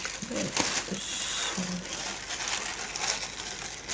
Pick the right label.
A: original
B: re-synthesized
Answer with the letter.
A